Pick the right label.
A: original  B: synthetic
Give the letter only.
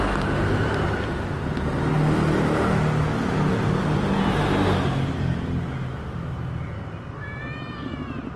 A